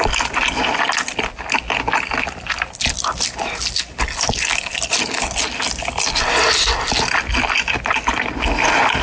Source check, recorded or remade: recorded